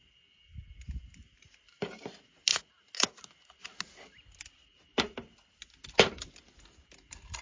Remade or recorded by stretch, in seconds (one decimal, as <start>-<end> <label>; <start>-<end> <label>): 0.0-1.2 recorded; 1.2-2.1 remade; 2.1-4.6 recorded; 4.6-5.3 remade; 5.3-7.4 recorded